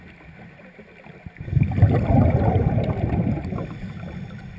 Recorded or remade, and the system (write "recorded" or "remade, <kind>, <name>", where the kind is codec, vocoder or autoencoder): recorded